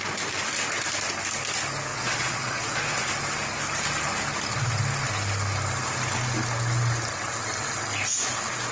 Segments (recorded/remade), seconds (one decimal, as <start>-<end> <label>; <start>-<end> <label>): 0.0-1.9 recorded; 1.9-3.1 remade; 3.1-8.7 recorded